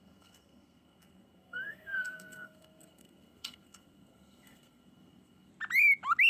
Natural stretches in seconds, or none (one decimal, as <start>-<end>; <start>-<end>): 5.5-6.3